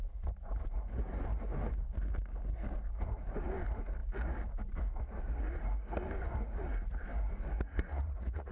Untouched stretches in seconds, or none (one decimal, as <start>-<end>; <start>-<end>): 0.0-7.7